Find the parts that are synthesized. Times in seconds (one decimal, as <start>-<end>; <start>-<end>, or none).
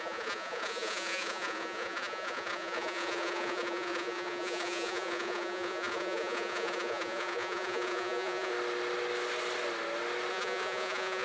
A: 0.0-8.5; 10.3-11.2